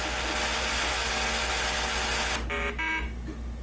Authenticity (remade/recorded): recorded